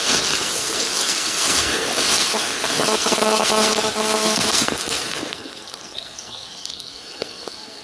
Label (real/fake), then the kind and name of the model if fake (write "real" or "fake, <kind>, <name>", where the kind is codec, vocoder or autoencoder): fake, codec, SNAC